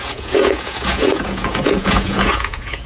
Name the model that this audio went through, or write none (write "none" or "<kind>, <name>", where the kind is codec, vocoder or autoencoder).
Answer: vocoder, Vocos